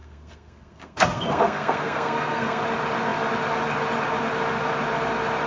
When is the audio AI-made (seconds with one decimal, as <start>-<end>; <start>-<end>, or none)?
0.0-2.6